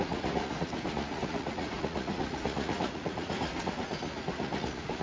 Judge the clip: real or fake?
fake